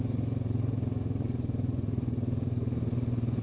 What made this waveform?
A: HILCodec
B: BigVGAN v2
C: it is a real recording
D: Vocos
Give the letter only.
C